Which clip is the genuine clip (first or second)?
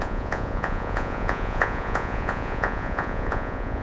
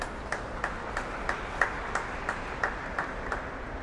second